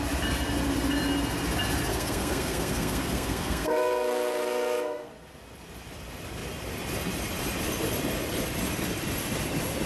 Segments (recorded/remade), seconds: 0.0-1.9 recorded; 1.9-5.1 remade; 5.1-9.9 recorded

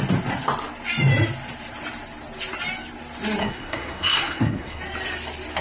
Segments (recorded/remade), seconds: 0.0-3.4 recorded; 3.4-4.8 remade; 4.8-5.6 recorded

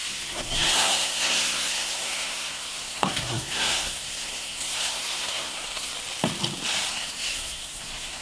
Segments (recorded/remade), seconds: 0.0-5.9 remade; 5.9-6.9 recorded; 6.9-8.2 remade

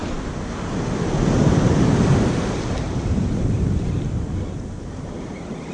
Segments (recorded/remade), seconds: 0.0-5.7 recorded

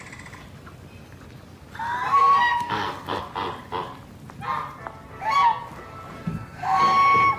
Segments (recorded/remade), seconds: 0.0-2.2 recorded; 2.2-3.2 remade; 3.2-6.3 recorded; 6.3-6.8 remade; 6.8-7.4 recorded

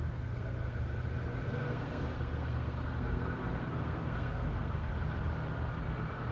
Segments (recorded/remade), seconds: 0.0-0.8 remade; 0.8-1.4 recorded; 1.4-4.9 remade; 4.9-6.3 recorded

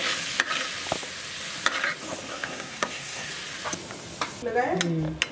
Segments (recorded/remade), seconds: 0.0-2.3 recorded; 2.3-3.3 remade; 3.3-5.3 recorded

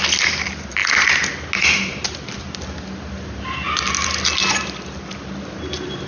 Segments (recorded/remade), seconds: 0.0-6.1 recorded